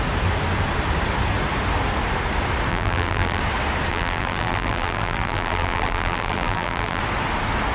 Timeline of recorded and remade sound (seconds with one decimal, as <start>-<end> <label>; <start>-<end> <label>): 0.0-2.7 recorded; 2.7-3.4 remade; 3.4-3.9 recorded; 3.9-7.0 remade; 7.0-7.7 recorded